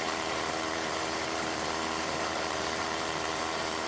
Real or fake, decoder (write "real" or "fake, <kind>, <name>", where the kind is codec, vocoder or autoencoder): fake, vocoder, BigVGAN v2